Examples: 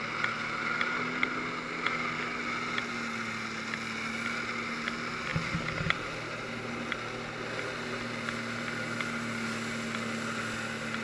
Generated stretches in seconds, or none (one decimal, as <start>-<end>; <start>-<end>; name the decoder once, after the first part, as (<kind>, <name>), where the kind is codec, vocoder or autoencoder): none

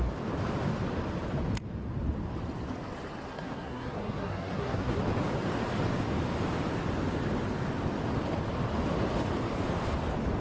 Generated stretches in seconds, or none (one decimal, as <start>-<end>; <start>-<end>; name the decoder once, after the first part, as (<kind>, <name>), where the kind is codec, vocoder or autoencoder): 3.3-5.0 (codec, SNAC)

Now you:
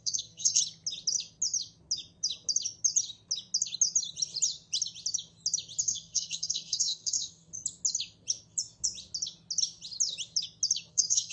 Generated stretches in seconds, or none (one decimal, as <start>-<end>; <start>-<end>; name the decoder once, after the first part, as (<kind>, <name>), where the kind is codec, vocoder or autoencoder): 0.0-0.6 (codec, SNAC); 5.8-7.5; 10.9-11.3

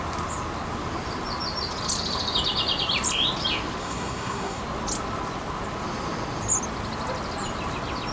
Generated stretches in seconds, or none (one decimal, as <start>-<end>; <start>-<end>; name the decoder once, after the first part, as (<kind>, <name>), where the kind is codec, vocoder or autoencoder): 3.8-4.6 (codec, SNAC)